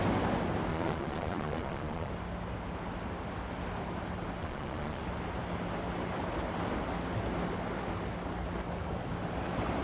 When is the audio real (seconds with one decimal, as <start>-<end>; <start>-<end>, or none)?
0.0-0.7; 2.1-4.4; 5.0-9.8